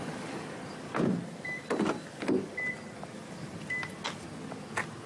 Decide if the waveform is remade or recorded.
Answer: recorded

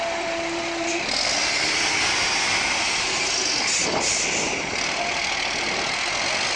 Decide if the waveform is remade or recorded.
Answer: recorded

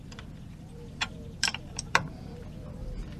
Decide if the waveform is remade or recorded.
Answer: remade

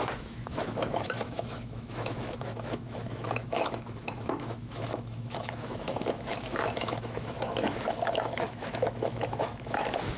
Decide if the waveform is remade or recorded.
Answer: remade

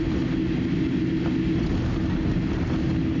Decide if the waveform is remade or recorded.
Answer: recorded